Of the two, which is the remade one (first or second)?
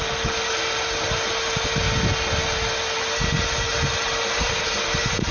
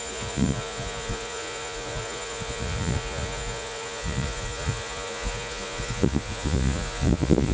second